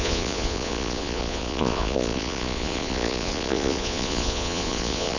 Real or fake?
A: fake